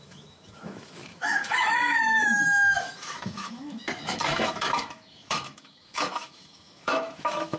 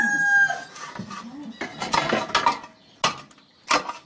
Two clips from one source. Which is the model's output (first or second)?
first